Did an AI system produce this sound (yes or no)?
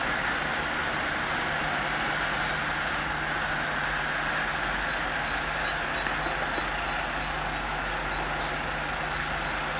no